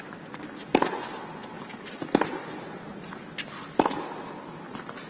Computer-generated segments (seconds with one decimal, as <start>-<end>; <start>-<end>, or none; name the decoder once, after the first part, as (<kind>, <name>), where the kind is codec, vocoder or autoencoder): none